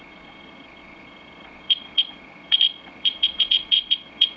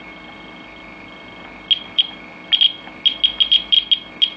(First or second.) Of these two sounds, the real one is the second